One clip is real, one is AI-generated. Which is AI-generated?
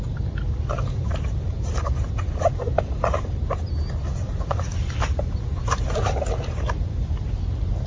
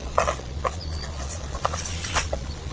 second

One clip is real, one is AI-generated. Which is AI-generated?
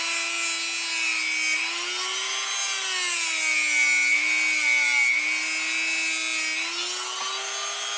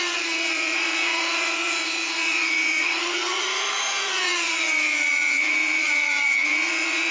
second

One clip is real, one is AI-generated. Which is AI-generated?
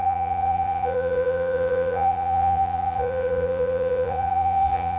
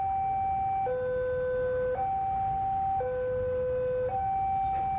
first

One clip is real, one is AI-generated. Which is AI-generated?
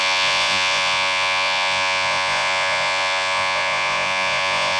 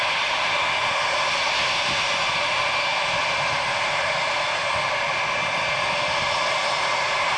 first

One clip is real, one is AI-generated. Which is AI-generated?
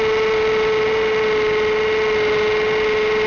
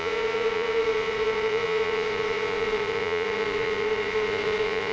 second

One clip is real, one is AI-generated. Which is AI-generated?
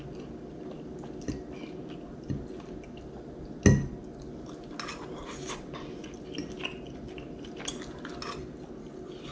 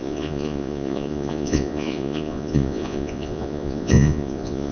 second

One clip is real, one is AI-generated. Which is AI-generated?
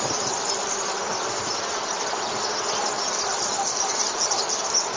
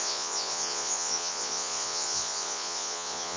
second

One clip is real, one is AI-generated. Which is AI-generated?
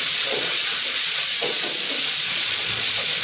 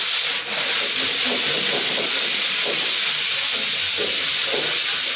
first